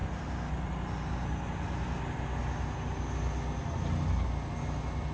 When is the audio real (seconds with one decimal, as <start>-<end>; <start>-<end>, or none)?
0.0-5.1